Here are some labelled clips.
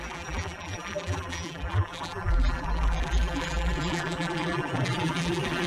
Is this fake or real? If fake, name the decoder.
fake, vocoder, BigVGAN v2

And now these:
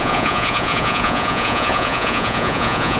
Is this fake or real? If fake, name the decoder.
fake, vocoder, Vocos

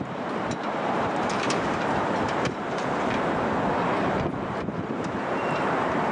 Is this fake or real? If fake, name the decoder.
fake, vocoder, BigVGAN v2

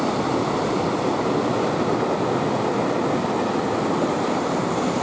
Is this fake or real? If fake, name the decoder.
real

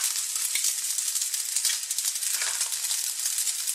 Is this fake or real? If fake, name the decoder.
real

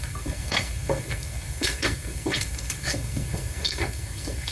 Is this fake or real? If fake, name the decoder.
fake, codec, SNAC